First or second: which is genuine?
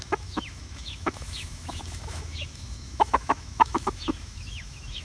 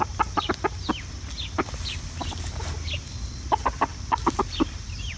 second